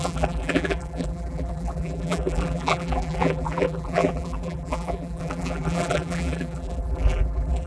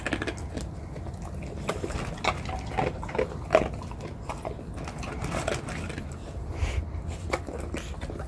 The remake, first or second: first